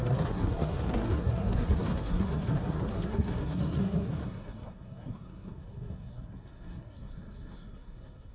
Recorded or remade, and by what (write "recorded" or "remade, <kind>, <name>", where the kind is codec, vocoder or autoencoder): remade, codec, SNAC